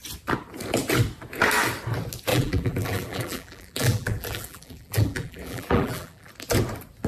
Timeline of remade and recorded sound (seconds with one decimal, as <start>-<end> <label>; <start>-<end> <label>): 0.0-2.3 recorded; 2.3-6.3 remade; 6.3-7.1 recorded